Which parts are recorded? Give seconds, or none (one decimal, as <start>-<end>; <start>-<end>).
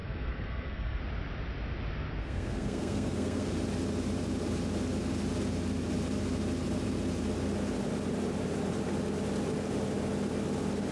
1.0-2.2; 3.5-10.9